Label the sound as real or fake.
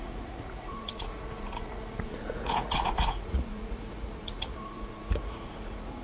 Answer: fake